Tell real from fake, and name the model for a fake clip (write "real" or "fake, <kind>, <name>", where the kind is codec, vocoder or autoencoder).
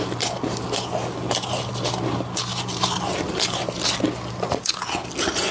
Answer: real